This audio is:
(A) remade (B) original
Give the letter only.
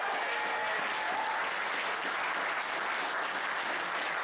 B